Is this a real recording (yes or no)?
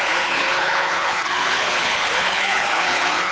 no